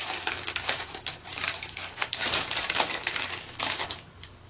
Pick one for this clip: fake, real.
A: fake